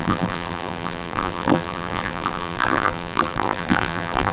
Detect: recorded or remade remade